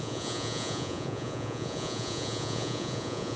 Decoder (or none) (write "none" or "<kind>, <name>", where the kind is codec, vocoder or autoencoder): vocoder, Vocos